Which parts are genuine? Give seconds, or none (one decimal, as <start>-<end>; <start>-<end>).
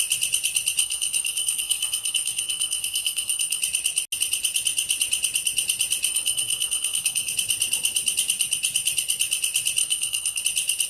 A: 0.0-0.8; 3.6-6.1; 7.3-9.8; 10.4-10.9